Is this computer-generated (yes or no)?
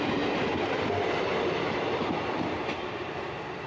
no